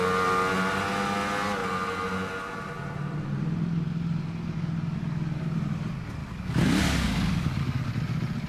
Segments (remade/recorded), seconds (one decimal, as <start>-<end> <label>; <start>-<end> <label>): 0.0-6.2 recorded; 6.2-7.9 remade; 7.9-8.5 recorded